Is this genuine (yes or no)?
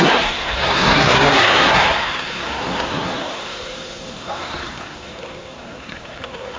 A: no